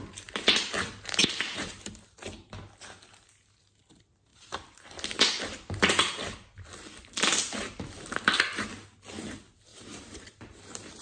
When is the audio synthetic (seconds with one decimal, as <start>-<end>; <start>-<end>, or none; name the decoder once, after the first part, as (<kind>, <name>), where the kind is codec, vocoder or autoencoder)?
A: 1.2-1.9 (vocoder, BigVGAN v2); 4.3-4.8; 9.7-10.6